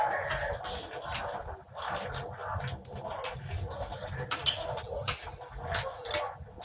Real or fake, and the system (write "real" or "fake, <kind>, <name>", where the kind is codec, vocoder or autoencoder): real